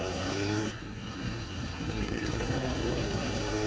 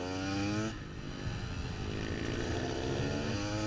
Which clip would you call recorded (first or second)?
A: second